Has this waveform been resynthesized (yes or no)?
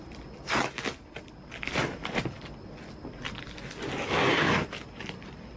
no